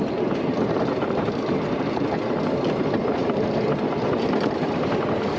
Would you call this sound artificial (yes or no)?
no